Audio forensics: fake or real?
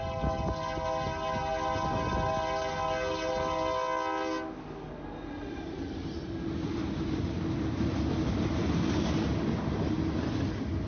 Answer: real